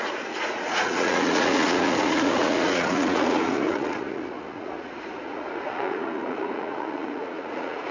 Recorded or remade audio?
remade